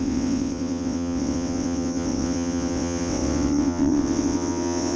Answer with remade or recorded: remade